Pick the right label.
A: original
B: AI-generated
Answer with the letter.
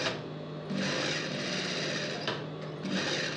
A